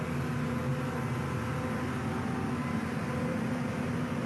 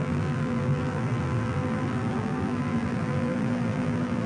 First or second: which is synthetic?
second